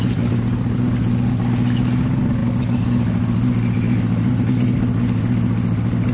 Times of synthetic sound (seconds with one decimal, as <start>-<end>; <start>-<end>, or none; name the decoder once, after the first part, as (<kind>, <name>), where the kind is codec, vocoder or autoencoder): none